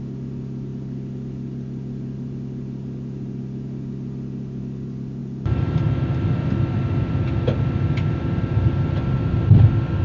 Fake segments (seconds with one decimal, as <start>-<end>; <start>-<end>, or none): none